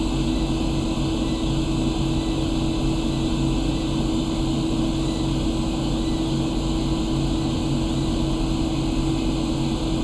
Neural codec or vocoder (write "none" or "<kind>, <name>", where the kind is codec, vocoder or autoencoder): none